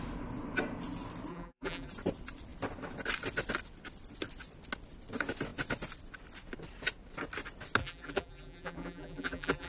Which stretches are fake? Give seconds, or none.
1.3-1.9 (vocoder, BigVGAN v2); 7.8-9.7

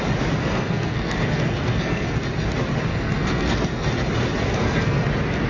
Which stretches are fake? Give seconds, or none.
0.4-2.2 (codec, SNAC); 2.9-3.9; 4.5-5.1